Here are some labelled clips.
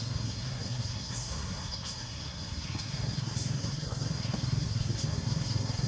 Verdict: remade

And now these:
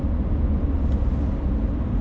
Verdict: recorded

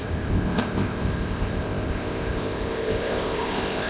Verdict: remade